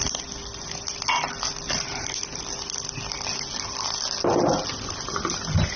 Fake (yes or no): no